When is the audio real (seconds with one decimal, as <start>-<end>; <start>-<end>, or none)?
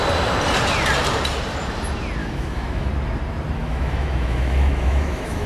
0.0-2.2; 2.9-3.6